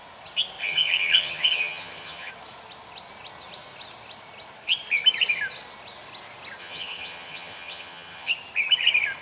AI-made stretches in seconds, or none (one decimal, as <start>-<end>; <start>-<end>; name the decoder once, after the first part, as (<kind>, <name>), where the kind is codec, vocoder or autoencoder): 0.6-2.3 (vocoder, HiFi-GAN); 6.6-8.3